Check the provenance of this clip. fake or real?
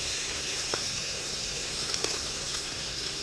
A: fake